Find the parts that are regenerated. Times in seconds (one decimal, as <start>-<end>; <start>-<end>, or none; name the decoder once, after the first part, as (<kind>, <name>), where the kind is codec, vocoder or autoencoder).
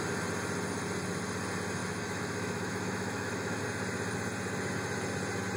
1.8-3.6 (autoencoder, DAC-VAE)